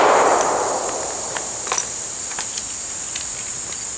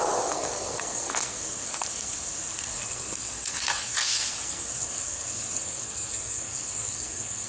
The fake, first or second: second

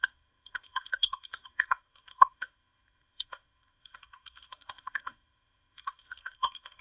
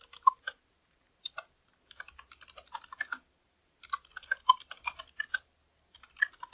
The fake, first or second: first